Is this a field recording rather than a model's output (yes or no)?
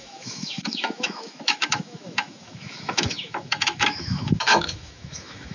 no